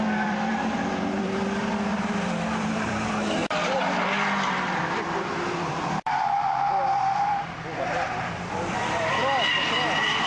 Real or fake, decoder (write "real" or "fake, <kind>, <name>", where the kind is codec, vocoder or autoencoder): fake, vocoder, BigVGAN v2